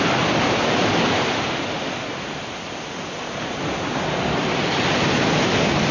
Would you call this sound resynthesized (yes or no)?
no